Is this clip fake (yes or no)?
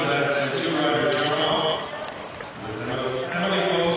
no